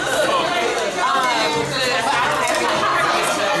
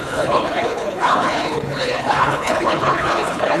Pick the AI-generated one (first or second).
second